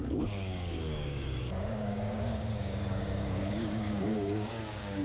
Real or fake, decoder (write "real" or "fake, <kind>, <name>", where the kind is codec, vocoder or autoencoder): fake, codec, DAC